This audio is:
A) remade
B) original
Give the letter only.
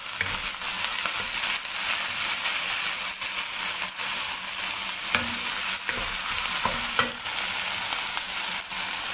B